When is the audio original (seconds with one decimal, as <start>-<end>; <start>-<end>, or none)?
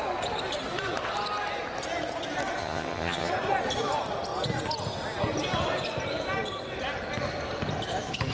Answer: 0.0-2.6; 3.3-8.3